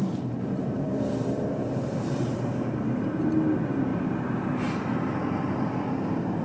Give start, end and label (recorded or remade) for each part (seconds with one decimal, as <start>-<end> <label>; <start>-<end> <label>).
0.0-3.3 remade; 3.3-3.9 recorded; 3.9-4.5 remade; 4.5-6.4 recorded

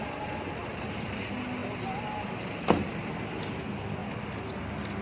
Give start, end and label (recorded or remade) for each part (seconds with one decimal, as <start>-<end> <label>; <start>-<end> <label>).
0.0-0.6 recorded; 0.6-1.1 remade; 1.1-5.0 recorded

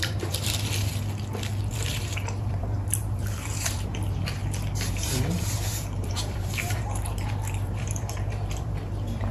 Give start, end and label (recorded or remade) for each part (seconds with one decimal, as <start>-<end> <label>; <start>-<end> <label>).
0.0-0.9 remade; 0.9-1.7 recorded; 1.7-4.4 remade; 4.4-4.9 recorded; 4.9-9.3 remade

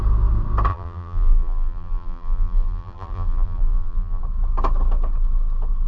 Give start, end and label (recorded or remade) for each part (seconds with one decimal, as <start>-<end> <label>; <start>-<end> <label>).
0.0-0.7 recorded; 0.7-4.2 remade; 4.2-5.9 recorded

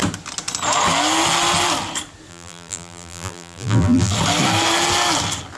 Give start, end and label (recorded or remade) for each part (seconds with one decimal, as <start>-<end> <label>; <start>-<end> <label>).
0.0-2.3 recorded; 2.3-4.1 remade; 4.1-5.6 recorded

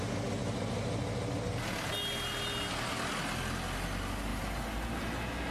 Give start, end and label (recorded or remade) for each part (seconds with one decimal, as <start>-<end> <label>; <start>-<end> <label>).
0.0-4.3 recorded; 4.3-5.0 remade; 5.0-5.5 recorded

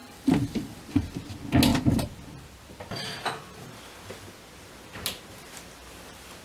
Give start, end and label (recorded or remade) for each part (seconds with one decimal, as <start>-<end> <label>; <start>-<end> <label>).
0.0-0.8 remade; 0.8-6.4 recorded